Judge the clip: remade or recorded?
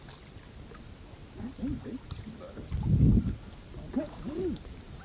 recorded